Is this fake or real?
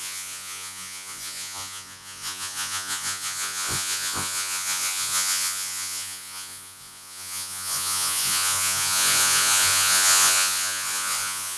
fake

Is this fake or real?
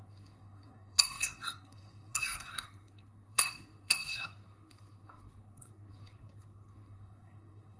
fake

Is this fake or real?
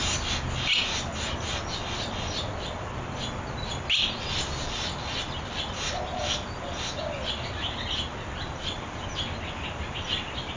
real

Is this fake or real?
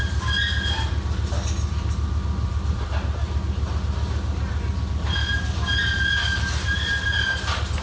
real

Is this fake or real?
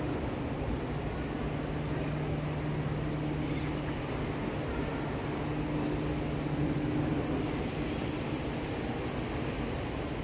real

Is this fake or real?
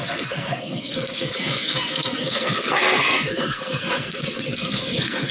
fake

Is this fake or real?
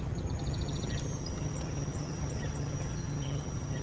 fake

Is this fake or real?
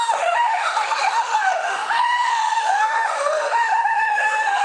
fake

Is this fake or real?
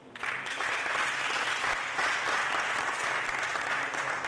real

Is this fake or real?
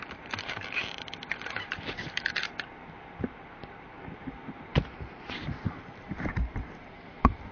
fake